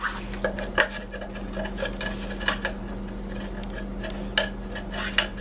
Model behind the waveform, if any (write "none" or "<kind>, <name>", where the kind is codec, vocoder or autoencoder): none